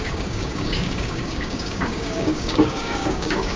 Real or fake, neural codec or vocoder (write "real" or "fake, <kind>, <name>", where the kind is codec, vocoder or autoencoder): fake, codec, DAC